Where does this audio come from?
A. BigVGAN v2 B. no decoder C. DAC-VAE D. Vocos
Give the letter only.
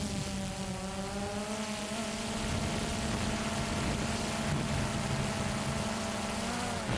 B